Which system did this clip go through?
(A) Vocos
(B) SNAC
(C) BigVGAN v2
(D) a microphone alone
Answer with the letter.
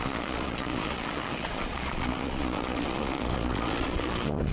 A